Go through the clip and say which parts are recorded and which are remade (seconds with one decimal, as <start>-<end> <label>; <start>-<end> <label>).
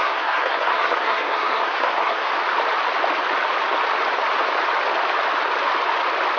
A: 0.0-2.3 remade; 2.3-6.4 recorded